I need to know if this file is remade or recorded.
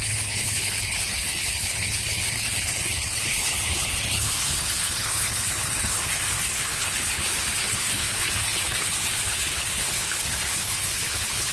remade